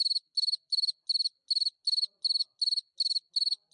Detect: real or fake real